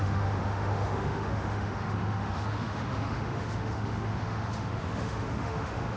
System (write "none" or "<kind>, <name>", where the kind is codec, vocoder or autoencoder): autoencoder, DAC-VAE